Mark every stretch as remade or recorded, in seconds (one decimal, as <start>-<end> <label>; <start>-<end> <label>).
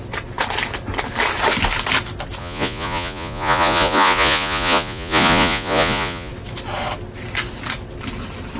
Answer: 0.0-2.4 recorded; 2.4-6.3 remade; 6.3-8.6 recorded